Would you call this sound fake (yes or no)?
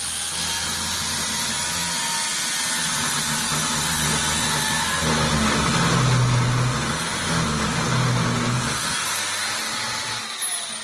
no